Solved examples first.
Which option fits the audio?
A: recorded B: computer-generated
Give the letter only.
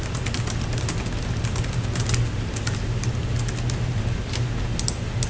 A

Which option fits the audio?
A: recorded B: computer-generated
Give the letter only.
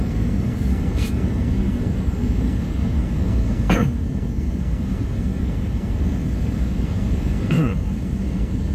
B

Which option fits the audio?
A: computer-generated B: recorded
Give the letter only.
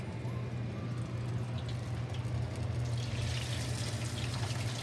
B